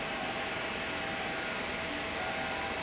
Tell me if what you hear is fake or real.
real